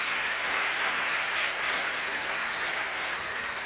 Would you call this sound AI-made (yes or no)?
yes